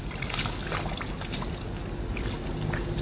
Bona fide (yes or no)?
yes